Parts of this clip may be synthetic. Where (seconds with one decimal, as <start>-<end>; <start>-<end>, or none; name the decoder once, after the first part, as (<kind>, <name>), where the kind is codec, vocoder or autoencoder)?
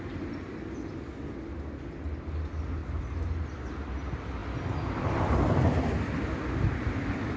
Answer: 2.8-3.7 (vocoder, BigVGAN v2)